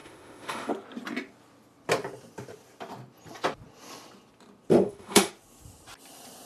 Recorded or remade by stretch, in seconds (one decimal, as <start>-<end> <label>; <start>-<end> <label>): 0.0-0.7 remade; 0.7-4.7 recorded; 4.7-5.3 remade; 5.3-6.5 recorded